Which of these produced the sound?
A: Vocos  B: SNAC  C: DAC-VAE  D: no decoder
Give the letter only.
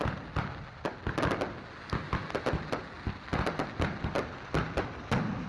D